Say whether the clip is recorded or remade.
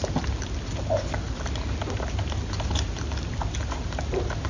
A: recorded